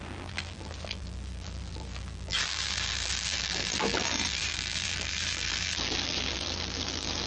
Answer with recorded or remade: remade